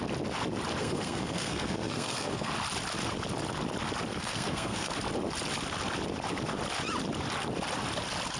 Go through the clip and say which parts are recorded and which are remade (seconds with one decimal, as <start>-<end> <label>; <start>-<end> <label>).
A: 0.0-0.8 recorded; 0.8-2.5 remade; 2.5-4.1 recorded; 4.1-4.9 remade; 4.9-8.4 recorded